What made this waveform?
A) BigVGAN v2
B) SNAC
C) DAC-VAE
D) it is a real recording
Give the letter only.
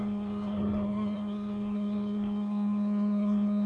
B